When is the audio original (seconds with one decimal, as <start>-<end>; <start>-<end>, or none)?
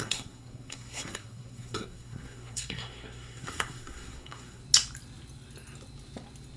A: 4.6-6.6